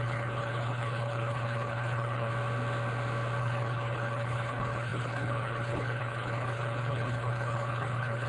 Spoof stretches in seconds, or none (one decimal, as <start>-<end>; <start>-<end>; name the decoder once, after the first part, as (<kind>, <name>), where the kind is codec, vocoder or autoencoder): 0.0-2.3 (codec, HILCodec); 3.4-8.3